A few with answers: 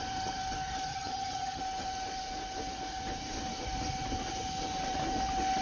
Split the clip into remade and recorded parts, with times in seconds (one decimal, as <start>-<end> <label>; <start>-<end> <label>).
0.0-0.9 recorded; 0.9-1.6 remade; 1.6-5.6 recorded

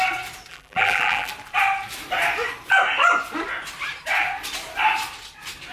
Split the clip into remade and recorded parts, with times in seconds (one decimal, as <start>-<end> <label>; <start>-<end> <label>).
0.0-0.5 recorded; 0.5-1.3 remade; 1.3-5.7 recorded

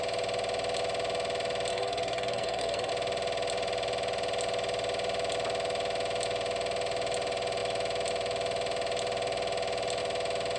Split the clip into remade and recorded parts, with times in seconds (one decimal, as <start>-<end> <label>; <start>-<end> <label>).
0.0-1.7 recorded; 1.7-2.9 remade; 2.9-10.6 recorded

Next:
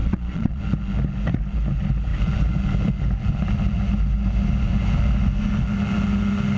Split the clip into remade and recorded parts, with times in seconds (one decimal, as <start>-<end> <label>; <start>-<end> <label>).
0.0-0.6 remade; 0.6-6.6 recorded

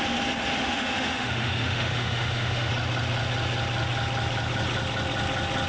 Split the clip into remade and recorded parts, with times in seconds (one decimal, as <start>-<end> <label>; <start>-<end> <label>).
0.0-0.6 recorded; 0.6-2.7 remade; 2.7-5.7 recorded